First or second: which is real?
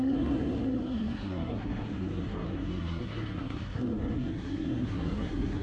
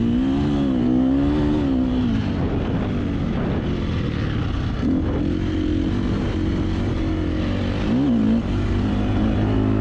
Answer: second